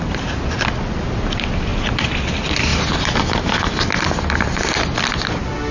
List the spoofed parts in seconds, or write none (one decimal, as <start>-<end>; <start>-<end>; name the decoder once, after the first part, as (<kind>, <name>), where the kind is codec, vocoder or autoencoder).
0.0-1.7 (vocoder, BigVGAN v2); 2.3-2.7